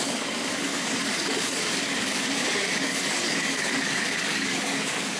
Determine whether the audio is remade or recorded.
remade